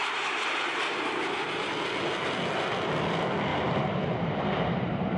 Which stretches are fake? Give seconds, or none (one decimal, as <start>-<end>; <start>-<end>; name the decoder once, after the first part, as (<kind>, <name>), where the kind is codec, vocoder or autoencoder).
0.0-1.7 (vocoder, BigVGAN v2); 3.5-5.2